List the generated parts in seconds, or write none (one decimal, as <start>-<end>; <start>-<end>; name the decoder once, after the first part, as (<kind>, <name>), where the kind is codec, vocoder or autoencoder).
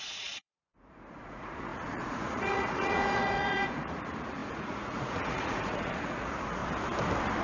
0.0-6.6 (vocoder, Vocos)